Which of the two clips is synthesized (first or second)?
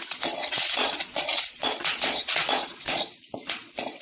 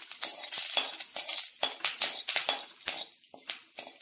first